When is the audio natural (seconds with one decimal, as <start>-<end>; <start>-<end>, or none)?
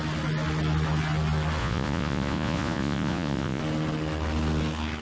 0.0-1.6; 3.6-5.0